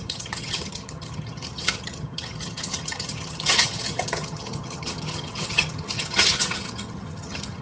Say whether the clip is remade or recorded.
remade